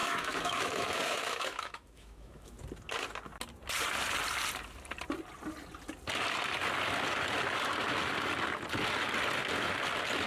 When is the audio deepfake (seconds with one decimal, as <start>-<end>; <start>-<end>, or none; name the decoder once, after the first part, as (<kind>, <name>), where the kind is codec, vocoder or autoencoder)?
0.0-2.6 (autoencoder, DAC-VAE)